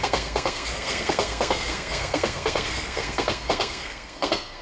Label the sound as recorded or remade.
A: remade